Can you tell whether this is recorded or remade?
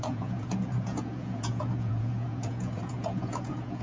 remade